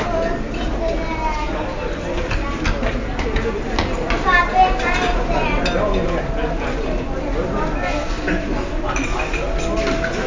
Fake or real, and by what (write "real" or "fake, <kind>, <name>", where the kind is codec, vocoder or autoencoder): real